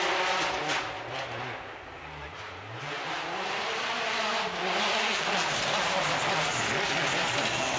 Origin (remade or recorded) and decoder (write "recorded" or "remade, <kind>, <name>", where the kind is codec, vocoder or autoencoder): recorded